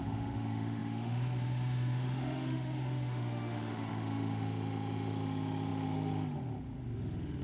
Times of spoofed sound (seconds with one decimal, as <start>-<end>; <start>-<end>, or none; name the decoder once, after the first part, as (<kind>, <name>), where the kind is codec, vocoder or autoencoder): 0.0-7.4 (autoencoder, DAC-VAE)